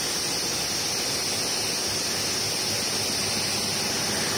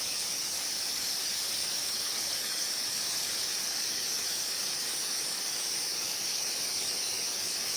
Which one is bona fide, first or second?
first